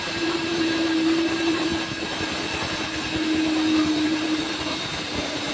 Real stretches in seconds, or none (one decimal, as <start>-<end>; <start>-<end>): 1.7-3.8